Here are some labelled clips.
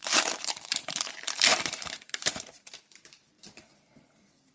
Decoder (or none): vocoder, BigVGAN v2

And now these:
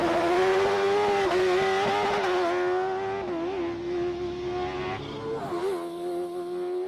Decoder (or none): none